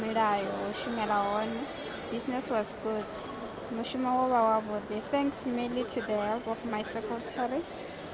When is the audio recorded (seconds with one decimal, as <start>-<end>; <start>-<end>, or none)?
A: 0.0-8.1